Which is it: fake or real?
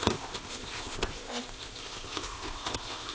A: fake